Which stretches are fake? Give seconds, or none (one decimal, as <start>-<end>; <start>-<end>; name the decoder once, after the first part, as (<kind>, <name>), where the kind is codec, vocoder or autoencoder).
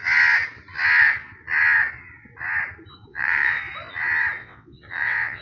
3.1-3.6 (vocoder, WaveNeXt); 4.4-5.4